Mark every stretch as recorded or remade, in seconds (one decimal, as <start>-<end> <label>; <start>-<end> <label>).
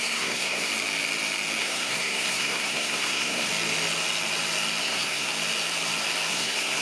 0.0-0.7 remade; 0.7-1.6 recorded; 1.6-3.5 remade; 3.5-4.8 recorded; 4.8-5.3 remade; 5.3-6.3 recorded; 6.3-6.8 remade